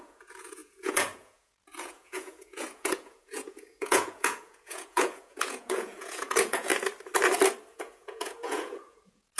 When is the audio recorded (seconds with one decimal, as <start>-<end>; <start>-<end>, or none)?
6.7-7.7